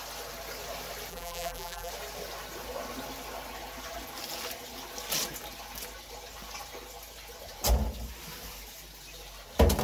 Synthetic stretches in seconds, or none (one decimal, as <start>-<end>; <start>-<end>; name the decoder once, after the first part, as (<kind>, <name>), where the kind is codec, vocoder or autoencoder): 1.1-1.9 (vocoder, BigVGAN v2)